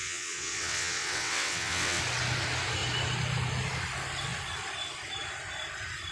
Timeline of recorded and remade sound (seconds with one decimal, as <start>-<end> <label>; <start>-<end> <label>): 0.0-2.0 remade; 2.0-6.1 recorded

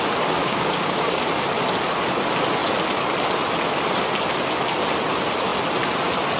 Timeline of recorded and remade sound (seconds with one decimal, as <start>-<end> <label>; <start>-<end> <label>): 0.0-0.4 recorded; 0.4-1.2 remade; 1.2-6.4 recorded

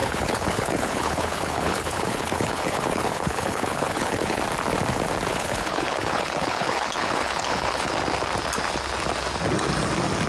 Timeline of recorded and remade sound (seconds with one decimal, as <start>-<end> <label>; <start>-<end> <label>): 0.0-4.4 remade; 4.4-5.3 recorded; 5.3-7.9 remade; 7.9-10.3 recorded

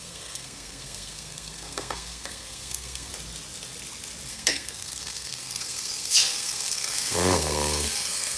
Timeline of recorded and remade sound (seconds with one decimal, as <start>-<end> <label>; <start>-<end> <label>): 0.0-3.1 remade; 3.1-4.3 recorded; 4.3-8.4 remade

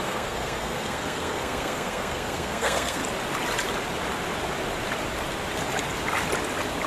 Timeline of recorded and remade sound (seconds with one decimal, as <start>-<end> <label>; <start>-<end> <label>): 0.0-3.0 remade; 3.0-6.9 recorded

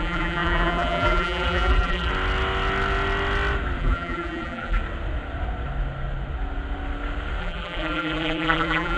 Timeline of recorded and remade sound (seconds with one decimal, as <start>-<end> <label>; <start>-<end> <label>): 0.0-2.1 remade; 2.1-3.8 recorded; 3.8-4.8 remade; 4.8-7.4 recorded; 7.4-9.0 remade